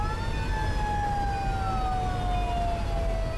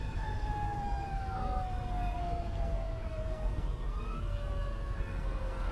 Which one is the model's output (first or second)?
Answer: second